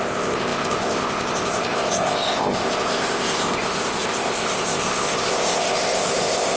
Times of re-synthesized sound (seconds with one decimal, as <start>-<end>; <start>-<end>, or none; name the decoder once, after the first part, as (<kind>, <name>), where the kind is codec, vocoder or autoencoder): 0.0-6.6 (codec, ZipCodec)